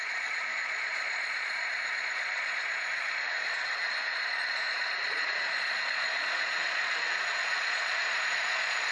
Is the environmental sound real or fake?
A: fake